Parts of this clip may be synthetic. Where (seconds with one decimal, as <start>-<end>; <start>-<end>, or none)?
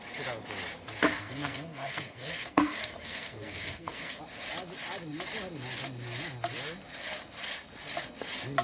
1.1-4.2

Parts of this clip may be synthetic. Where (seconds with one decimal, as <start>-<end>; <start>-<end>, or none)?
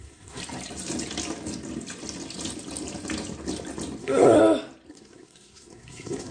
0.0-0.4; 4.0-4.4; 4.9-6.3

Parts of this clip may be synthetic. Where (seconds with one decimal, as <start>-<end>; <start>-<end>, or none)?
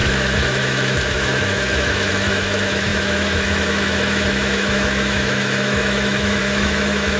0.0-7.2